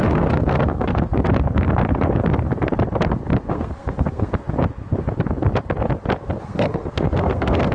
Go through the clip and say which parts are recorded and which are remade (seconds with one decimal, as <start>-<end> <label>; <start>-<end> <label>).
0.0-1.1 remade; 1.1-3.5 recorded; 3.5-4.3 remade; 4.3-6.4 recorded; 6.4-7.7 remade